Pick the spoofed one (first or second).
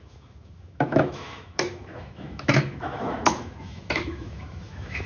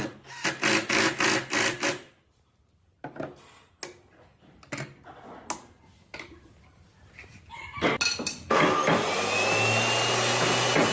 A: first